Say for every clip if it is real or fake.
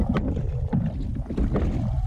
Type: real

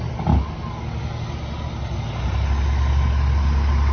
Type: real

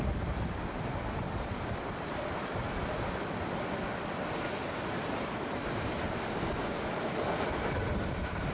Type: fake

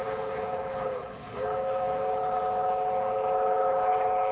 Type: fake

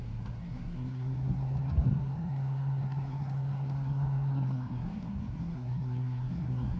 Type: fake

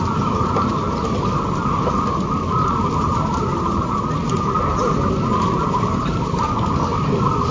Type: real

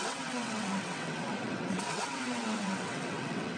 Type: fake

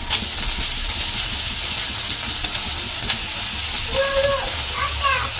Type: real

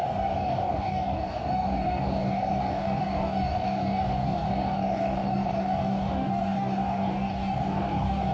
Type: fake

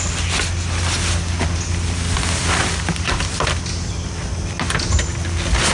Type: real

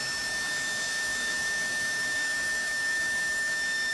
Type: fake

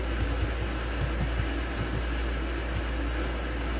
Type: real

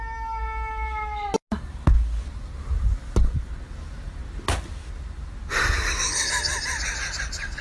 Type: real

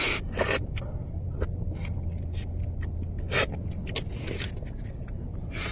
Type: real